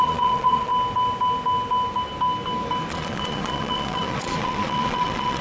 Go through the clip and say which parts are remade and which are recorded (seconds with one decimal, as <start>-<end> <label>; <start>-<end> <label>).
0.0-0.7 remade; 0.7-2.9 recorded; 2.9-5.4 remade